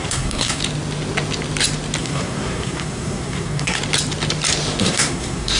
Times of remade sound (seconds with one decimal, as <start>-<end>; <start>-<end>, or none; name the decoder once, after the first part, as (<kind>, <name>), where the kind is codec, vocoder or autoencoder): 0.0-0.6 (codec, SNAC); 2.0-3.8; 4.8-5.6